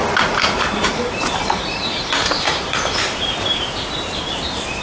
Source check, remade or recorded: remade